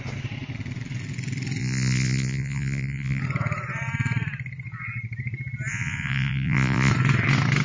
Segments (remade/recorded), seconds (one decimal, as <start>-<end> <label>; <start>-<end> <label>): 0.0-1.6 recorded; 1.6-3.2 remade; 3.2-5.7 recorded; 5.7-6.9 remade; 6.9-7.6 recorded